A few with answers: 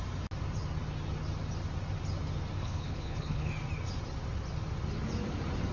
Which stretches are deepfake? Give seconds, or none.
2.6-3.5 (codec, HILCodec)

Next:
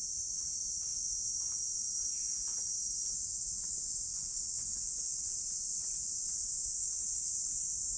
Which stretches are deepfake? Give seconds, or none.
4.1-5.3 (codec, HILCodec); 6.8-7.3

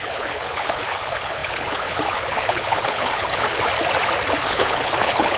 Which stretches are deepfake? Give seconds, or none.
0.0-3.7 (codec, HILCodec); 4.4-5.4

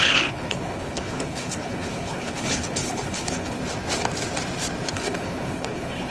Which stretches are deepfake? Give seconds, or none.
0.0-3.6 (codec, HILCodec); 4.9-6.1

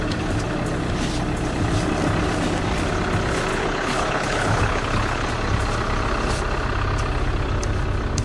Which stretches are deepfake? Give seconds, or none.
3.5-5.3 (codec, HILCodec)

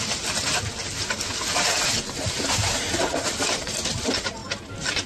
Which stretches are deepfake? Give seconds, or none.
none

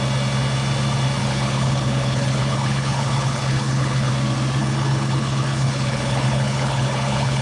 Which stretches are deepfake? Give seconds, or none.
1.2-4.1 (codec, HILCodec); 4.6-7.4

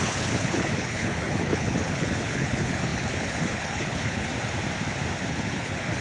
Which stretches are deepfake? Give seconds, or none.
0.0-4.3 (codec, HILCodec); 5.3-6.0